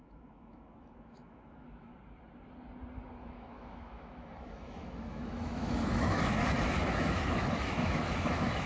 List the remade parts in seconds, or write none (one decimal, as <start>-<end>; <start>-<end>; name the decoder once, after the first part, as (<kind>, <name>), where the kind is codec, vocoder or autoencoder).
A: 0.0-1.9 (autoencoder, DAC-VAE); 3.3-8.7